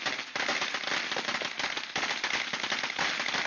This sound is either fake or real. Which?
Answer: real